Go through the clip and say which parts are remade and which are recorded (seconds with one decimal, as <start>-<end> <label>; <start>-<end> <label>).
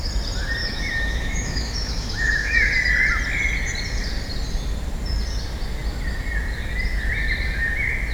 0.0-0.6 recorded; 0.6-2.7 remade; 2.7-8.1 recorded